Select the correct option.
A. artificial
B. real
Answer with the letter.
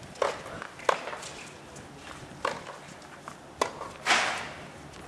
B